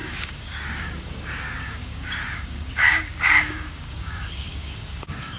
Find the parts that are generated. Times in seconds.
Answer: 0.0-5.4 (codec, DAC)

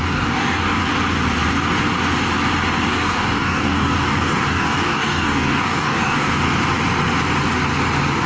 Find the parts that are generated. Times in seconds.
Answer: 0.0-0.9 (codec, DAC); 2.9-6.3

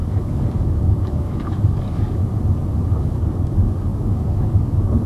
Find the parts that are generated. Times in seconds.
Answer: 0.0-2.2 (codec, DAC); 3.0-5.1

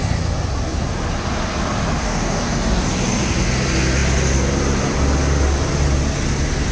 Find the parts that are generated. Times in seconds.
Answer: 2.0-2.9 (codec, DAC)

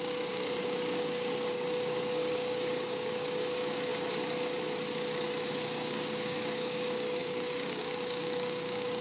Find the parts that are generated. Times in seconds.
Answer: 0.0-3.9 (codec, DAC); 5.5-9.0

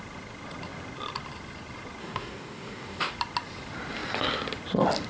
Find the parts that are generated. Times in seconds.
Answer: 2.0-3.1 (codec, DAC)

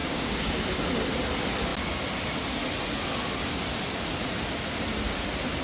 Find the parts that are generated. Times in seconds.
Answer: 0.0-0.6 (codec, DAC)

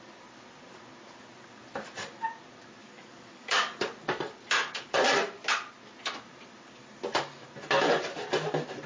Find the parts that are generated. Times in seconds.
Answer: 2.8-3.9 (codec, DAC)